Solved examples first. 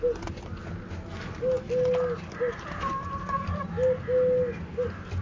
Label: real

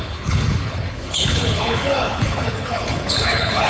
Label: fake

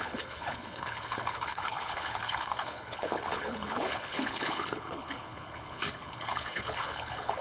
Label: fake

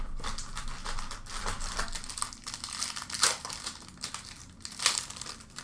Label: real